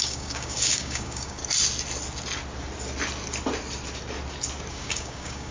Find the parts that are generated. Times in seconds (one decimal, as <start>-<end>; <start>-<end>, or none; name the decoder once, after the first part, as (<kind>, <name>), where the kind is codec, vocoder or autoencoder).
0.0-1.4 (codec, DAC); 4.7-5.5